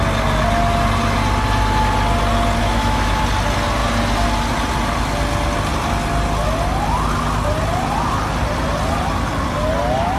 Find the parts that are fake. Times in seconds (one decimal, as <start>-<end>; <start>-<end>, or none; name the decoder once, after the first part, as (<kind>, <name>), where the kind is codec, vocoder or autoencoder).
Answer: 2.6-3.2 (autoencoder, DAC-VAE)